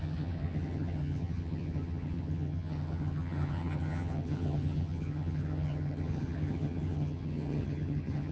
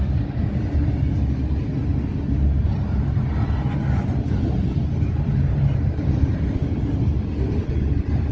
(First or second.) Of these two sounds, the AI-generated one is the first